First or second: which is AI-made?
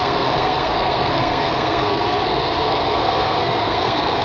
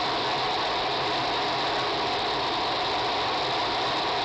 first